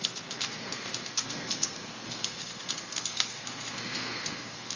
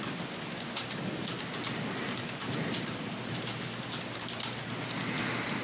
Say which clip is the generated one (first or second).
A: first